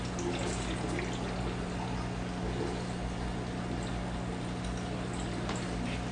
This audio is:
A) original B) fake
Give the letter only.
A